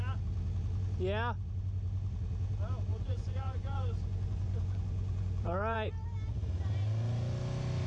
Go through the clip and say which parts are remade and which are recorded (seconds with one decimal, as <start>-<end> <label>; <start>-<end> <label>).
0.0-2.9 recorded; 2.9-5.9 remade; 5.9-7.9 recorded